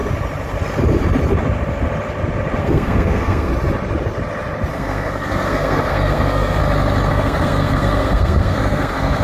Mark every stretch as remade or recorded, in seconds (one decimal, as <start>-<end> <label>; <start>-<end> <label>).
0.0-2.6 recorded; 2.6-3.5 remade; 3.5-4.7 recorded; 4.7-6.6 remade; 6.6-7.1 recorded; 7.1-9.2 remade